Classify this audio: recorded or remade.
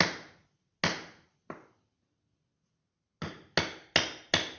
recorded